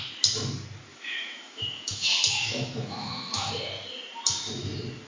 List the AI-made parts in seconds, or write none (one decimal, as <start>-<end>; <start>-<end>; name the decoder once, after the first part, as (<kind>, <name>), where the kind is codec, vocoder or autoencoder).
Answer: 0.9-3.5 (autoencoder, DAC-VAE)